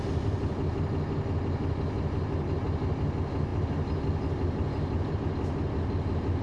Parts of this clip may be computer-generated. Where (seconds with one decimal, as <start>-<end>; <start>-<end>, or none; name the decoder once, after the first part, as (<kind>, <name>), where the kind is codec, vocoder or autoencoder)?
none